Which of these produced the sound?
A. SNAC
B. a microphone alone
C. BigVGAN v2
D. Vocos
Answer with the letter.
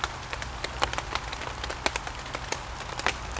B